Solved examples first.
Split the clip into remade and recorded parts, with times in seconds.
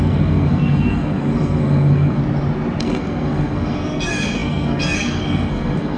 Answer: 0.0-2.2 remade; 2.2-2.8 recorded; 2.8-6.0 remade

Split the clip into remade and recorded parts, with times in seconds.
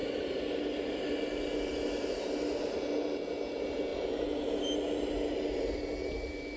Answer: 0.0-6.6 recorded